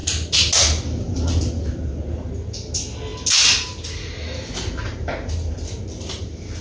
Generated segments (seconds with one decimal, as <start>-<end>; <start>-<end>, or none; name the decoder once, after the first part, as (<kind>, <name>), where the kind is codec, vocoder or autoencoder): none